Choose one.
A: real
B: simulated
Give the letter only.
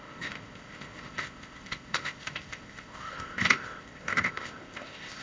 B